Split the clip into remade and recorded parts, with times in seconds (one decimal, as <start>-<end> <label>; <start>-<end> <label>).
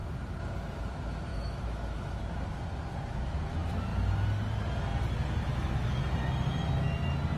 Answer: 0.0-1.3 recorded; 1.3-2.2 remade; 2.2-5.4 recorded; 5.4-6.0 remade; 6.0-7.4 recorded